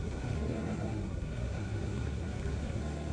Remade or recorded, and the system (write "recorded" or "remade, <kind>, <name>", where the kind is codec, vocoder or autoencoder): remade, codec, SNAC